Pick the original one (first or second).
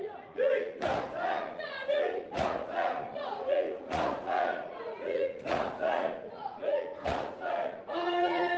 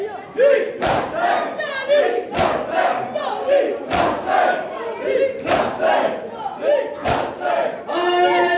second